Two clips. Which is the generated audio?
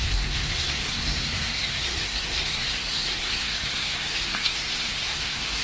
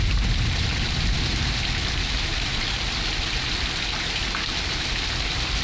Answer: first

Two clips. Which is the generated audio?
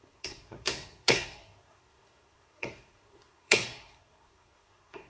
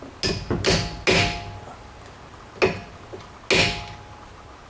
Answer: first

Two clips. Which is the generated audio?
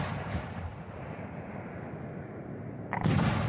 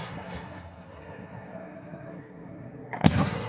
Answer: second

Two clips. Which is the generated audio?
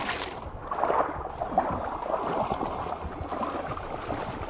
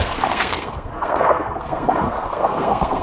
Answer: second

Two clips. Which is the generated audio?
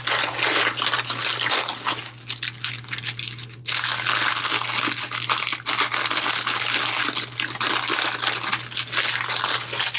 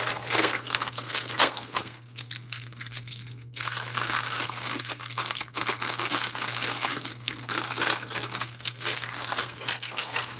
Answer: second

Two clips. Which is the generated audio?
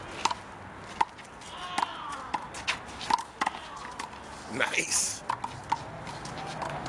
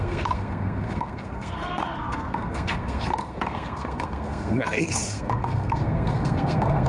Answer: second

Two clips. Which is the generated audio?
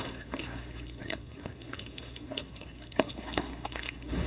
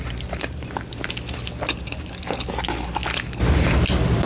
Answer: first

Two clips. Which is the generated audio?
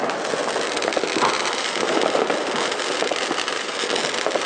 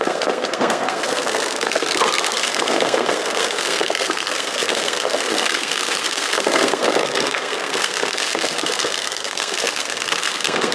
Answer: second